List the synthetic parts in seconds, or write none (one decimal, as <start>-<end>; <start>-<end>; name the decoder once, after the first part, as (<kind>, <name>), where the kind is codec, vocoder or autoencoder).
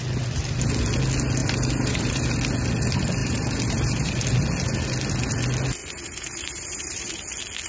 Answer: 1.4-2.2 (vocoder, BigVGAN v2); 3.2-4.1; 5.8-7.3